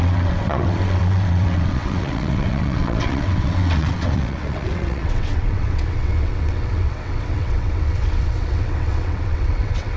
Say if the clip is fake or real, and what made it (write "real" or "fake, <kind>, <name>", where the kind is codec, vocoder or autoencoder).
fake, vocoder, WaveNeXt